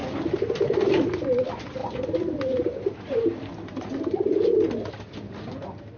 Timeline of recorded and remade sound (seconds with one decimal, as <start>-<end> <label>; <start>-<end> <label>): 0.0-0.9 remade; 0.9-1.8 recorded; 1.8-3.8 remade; 3.8-6.0 recorded